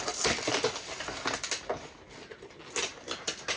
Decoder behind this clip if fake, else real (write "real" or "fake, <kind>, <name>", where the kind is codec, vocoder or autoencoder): real